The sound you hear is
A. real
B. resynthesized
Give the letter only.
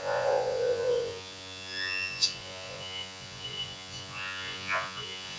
B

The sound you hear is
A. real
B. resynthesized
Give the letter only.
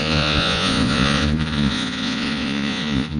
B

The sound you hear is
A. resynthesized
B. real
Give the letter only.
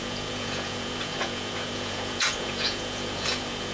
A